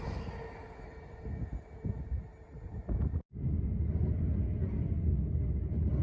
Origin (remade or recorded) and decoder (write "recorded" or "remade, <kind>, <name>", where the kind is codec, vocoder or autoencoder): recorded